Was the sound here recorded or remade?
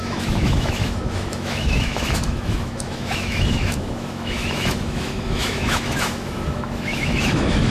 remade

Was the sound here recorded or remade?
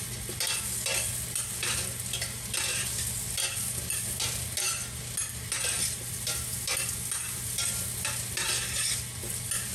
recorded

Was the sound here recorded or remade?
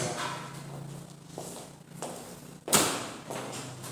recorded